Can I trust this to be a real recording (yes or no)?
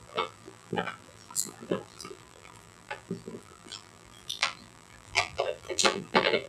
no